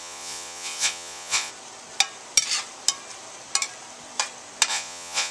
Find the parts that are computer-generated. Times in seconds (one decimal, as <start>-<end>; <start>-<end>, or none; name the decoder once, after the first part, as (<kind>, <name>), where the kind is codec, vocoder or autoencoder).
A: 0.0-1.5 (vocoder, Vocos); 4.7-5.3